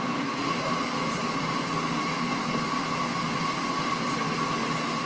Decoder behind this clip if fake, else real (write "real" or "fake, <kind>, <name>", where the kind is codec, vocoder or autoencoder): real